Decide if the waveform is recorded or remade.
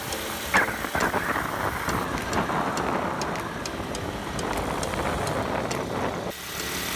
recorded